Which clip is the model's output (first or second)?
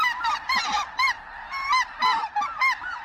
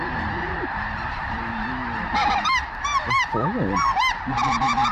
second